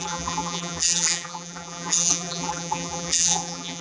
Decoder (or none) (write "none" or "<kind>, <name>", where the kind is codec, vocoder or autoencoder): vocoder, BigVGAN v2